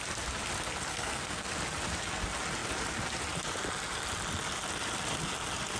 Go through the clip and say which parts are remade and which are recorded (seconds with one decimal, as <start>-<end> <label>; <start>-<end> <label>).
0.0-0.9 recorded; 0.9-1.5 remade; 1.5-5.8 recorded